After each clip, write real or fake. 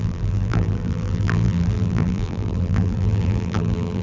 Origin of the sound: fake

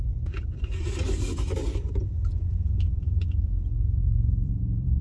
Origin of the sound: fake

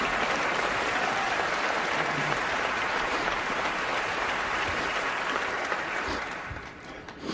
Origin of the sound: fake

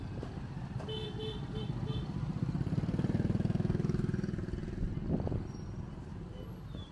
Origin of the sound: real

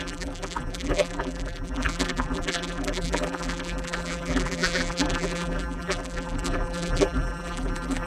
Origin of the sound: fake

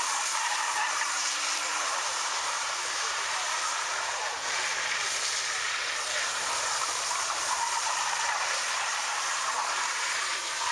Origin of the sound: fake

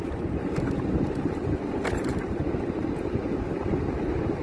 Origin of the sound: fake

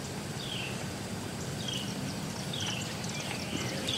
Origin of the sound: fake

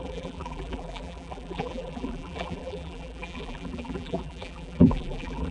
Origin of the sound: fake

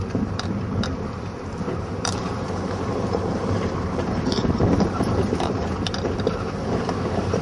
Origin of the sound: fake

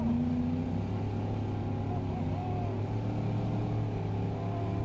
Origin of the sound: real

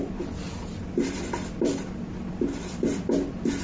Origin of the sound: fake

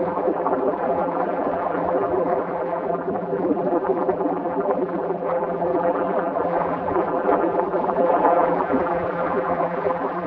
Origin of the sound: fake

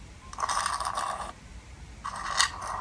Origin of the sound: fake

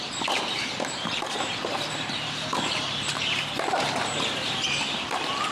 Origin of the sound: fake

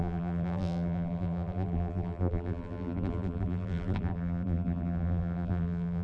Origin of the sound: fake